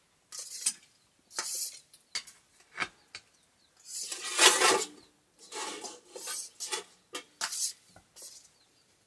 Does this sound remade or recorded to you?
recorded